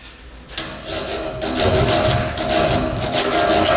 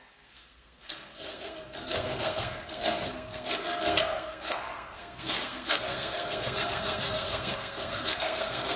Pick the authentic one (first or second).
first